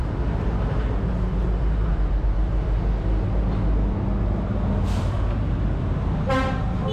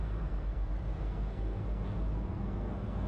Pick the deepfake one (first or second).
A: second